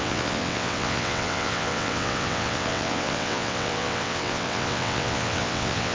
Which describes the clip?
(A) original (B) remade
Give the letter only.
B